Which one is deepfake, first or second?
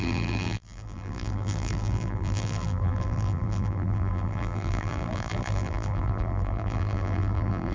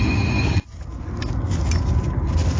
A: first